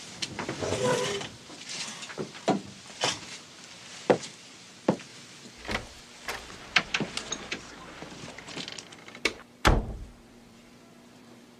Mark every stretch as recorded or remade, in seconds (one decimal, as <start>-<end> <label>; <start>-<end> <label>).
0.0-5.1 remade; 5.1-6.3 recorded; 6.3-11.6 remade